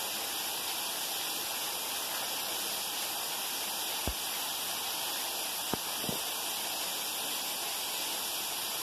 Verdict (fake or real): real